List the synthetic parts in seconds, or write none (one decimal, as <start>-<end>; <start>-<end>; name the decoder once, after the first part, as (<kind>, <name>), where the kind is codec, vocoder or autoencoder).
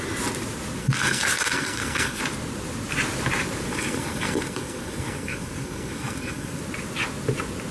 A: 0.8-2.2 (codec, SNAC); 3.7-6.6